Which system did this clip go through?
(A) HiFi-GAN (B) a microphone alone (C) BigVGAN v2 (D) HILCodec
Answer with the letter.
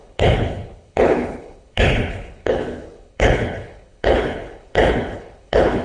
D